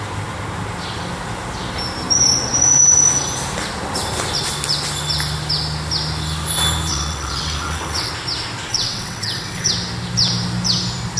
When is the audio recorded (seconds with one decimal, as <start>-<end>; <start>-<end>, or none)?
0.0-6.9; 8.1-8.7; 9.7-11.2